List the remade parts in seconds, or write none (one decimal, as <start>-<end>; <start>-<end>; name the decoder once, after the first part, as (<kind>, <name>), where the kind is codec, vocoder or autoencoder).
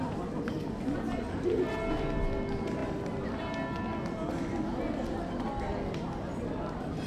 none